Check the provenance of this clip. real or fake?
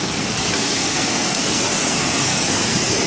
fake